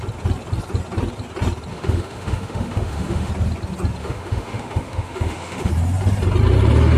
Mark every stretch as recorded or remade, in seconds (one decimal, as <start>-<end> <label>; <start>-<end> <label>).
0.0-1.7 recorded; 1.7-3.3 remade; 3.3-4.0 recorded; 4.0-5.7 remade; 5.7-7.0 recorded